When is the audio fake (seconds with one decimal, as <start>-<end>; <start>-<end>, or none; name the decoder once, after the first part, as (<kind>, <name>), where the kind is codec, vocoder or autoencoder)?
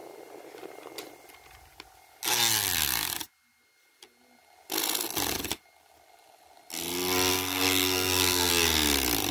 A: 7.3-8.5 (codec, SNAC)